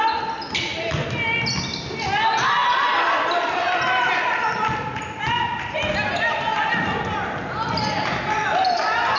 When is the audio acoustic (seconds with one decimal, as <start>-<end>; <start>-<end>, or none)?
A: 0.0-9.2

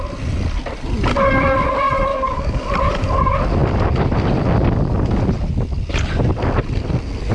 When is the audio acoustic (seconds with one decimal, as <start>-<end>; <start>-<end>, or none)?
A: 0.0-2.1; 2.7-7.3